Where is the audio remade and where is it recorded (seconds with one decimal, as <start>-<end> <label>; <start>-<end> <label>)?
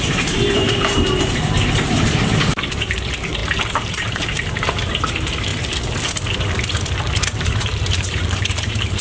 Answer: 0.0-5.5 remade; 5.5-7.4 recorded; 7.4-9.0 remade